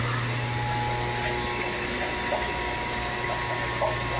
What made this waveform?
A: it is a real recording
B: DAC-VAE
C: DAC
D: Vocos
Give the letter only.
A